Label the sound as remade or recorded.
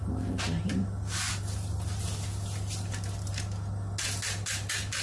recorded